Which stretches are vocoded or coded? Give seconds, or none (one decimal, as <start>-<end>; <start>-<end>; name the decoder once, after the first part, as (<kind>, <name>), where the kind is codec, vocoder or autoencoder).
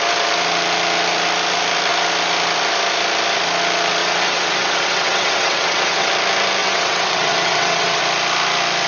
4.0-6.1 (vocoder, WaveNeXt); 6.6-8.0